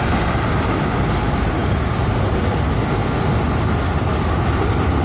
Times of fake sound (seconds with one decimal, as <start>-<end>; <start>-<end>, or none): none